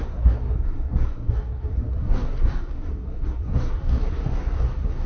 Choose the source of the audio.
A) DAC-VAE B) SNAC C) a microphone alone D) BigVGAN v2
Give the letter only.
B